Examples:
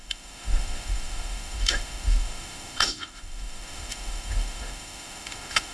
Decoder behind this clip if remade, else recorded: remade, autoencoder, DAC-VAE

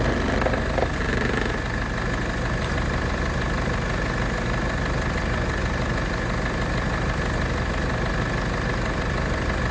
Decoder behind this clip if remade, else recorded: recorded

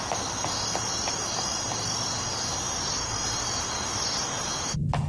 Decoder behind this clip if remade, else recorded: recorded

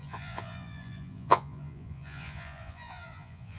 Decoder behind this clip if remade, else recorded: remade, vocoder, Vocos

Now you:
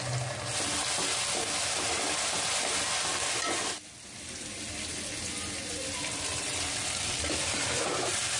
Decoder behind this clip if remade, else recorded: recorded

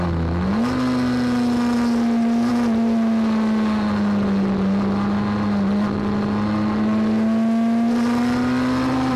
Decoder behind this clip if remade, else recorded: recorded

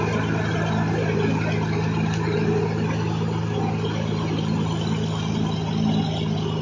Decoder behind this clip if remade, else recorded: recorded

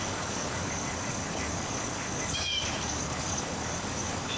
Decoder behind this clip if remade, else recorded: remade, codec, DAC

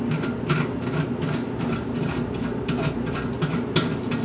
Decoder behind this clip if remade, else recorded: recorded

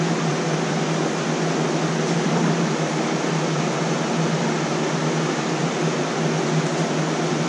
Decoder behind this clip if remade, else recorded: recorded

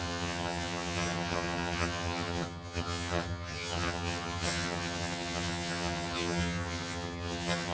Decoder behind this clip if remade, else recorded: remade, vocoder, HiFi-GAN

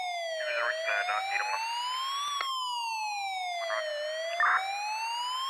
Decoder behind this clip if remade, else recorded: recorded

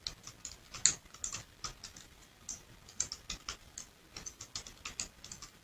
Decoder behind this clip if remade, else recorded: recorded